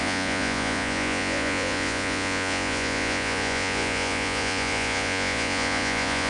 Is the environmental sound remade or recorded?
remade